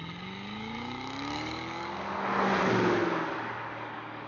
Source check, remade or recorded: remade